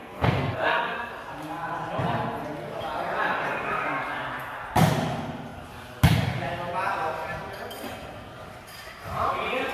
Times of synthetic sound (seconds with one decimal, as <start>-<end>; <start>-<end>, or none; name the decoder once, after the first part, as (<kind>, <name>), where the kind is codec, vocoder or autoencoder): 0.0-1.1 (codec, SNAC)